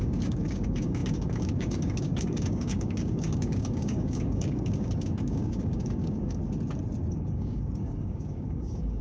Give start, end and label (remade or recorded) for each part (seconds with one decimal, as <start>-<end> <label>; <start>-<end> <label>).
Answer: 0.0-6.4 remade; 6.4-7.1 recorded; 7.1-9.0 remade